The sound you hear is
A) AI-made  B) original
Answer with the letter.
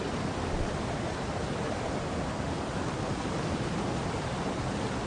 B